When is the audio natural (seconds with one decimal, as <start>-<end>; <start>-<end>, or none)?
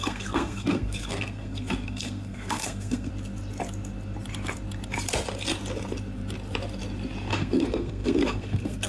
3.1-7.3